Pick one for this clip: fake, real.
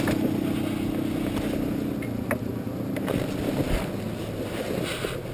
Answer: real